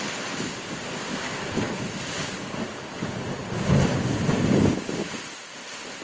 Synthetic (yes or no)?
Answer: no